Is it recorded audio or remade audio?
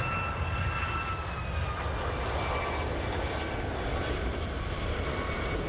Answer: recorded